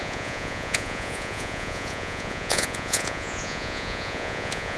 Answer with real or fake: fake